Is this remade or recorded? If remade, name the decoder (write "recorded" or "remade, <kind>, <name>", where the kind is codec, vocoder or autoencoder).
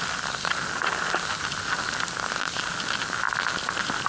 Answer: recorded